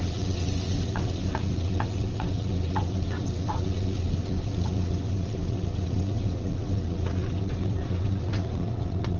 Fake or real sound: fake